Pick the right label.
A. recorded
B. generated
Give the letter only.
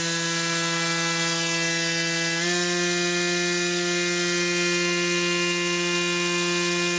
A